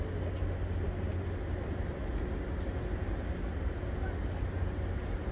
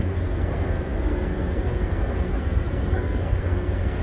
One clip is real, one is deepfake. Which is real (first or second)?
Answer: first